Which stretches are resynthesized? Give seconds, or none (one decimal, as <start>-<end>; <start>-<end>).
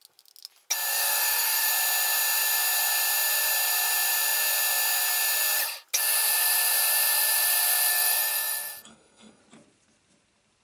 0.9-1.7; 7.9-9.4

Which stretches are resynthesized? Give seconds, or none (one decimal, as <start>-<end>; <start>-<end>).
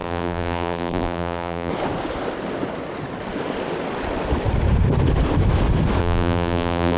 0.0-1.7; 6.0-7.0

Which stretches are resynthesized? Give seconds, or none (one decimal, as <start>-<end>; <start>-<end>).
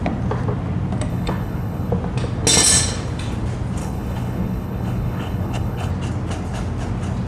1.1-1.9; 3.8-5.9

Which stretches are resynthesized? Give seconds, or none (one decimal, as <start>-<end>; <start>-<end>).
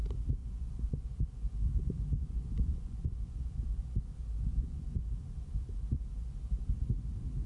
0.4-4.0; 4.5-5.0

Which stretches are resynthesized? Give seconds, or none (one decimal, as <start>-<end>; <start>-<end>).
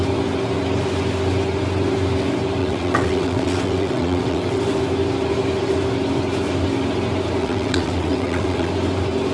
2.6-4.6; 7.4-8.7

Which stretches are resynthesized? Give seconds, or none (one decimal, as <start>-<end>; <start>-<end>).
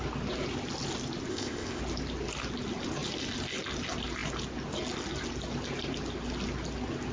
1.3-1.8